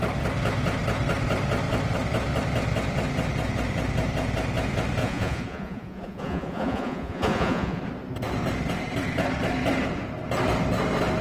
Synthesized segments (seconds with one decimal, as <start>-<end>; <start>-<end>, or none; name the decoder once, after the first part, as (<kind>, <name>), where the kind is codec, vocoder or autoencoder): 5.0-7.8 (vocoder, Vocos)